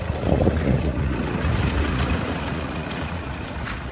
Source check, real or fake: fake